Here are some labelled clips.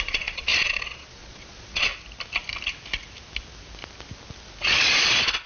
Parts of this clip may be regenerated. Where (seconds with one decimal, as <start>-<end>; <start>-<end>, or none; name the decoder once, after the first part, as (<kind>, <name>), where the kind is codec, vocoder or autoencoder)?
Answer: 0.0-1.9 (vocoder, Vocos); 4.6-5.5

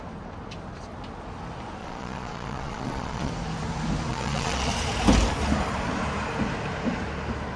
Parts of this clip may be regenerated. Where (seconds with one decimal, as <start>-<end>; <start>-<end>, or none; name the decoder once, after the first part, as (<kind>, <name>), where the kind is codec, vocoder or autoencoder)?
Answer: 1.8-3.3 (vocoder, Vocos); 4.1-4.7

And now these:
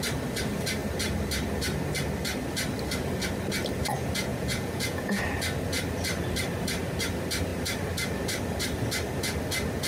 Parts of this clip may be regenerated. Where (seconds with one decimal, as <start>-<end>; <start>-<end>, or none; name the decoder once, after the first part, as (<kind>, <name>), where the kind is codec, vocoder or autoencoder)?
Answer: 4.3-5.2 (vocoder, Vocos)